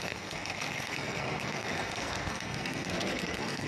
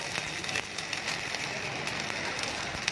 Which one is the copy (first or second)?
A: first